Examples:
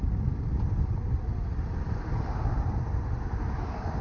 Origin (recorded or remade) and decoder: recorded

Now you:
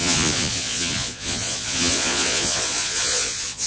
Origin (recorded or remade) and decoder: remade, vocoder, Vocos